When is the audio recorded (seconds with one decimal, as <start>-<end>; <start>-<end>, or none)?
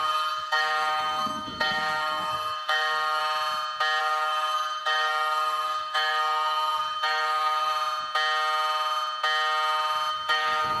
3.2-4.0; 7.7-10.1